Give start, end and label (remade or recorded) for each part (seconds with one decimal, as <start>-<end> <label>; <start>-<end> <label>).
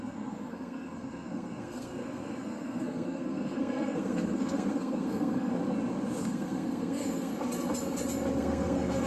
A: 0.0-5.6 remade; 5.6-6.2 recorded; 6.2-7.3 remade; 7.3-8.4 recorded; 8.4-9.1 remade